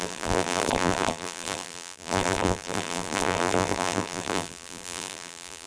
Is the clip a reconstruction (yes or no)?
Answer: yes